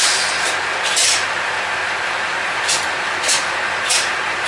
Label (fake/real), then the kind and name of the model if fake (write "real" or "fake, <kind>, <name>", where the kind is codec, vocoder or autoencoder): fake, vocoder, BigVGAN v2